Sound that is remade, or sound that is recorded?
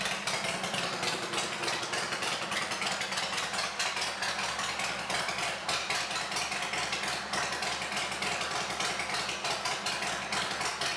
recorded